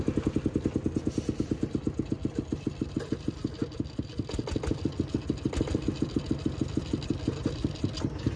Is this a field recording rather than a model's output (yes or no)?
yes